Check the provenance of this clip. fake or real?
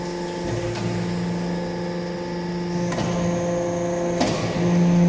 real